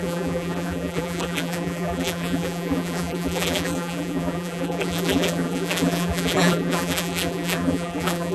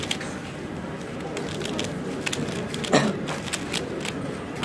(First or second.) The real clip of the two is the second